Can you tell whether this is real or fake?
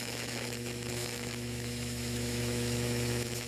fake